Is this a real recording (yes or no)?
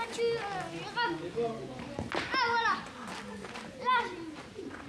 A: yes